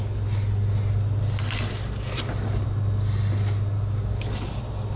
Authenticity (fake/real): real